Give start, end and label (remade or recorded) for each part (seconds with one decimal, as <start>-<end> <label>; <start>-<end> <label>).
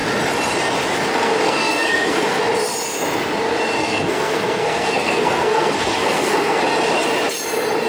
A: 0.0-1.1 recorded; 1.1-2.4 remade; 2.4-3.8 recorded; 3.8-6.6 remade; 6.6-7.9 recorded